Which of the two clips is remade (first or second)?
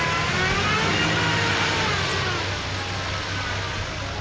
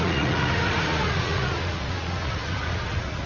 second